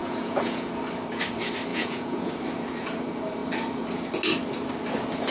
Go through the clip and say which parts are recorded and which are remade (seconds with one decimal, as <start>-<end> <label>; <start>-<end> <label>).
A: 0.0-0.7 remade; 0.7-1.7 recorded; 1.7-2.3 remade; 2.3-5.3 recorded